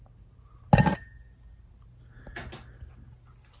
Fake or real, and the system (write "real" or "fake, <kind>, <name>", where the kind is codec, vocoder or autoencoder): real